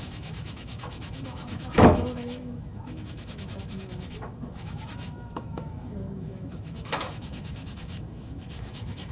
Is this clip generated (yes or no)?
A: yes